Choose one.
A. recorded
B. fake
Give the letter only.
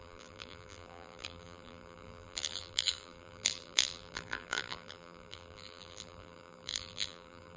B